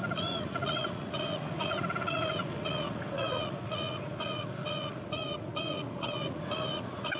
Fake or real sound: fake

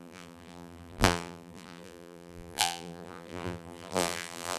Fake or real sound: fake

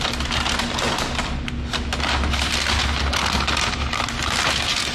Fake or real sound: real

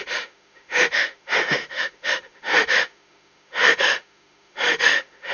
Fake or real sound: fake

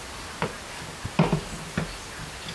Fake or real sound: real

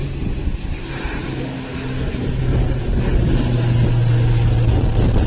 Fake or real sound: real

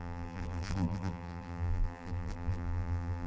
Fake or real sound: fake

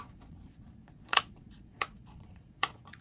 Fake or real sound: fake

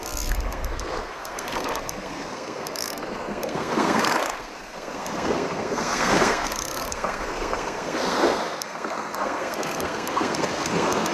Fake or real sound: fake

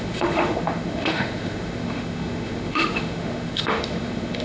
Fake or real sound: fake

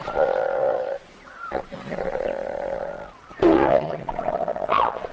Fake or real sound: fake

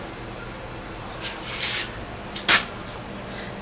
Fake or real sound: real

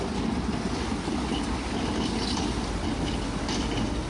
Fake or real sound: real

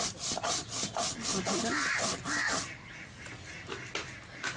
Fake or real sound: real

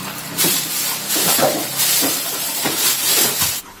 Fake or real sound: fake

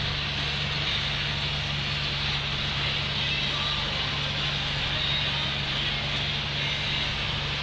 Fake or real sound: real